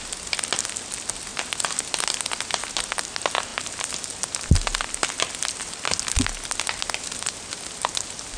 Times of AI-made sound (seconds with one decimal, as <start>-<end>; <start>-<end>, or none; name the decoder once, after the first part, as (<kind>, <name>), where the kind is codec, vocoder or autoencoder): none